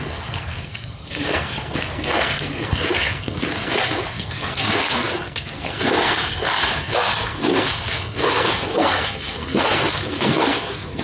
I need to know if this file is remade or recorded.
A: remade